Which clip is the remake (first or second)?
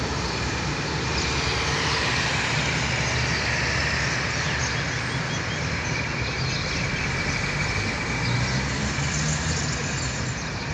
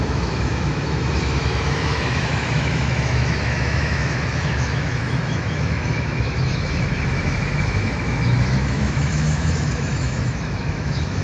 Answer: second